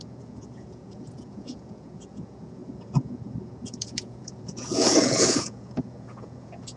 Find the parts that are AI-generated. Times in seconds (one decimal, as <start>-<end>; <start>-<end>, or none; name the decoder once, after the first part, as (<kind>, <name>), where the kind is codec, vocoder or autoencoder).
0.0-6.8 (vocoder, Vocos)